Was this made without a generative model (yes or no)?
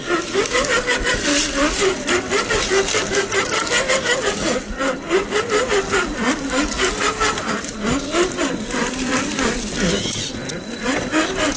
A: yes